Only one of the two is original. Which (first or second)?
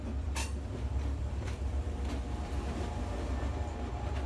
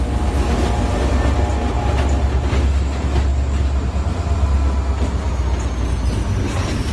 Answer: second